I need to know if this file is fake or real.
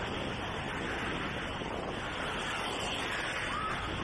real